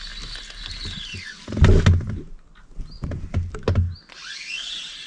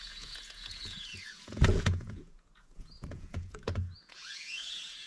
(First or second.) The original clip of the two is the first